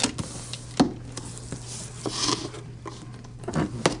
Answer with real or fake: real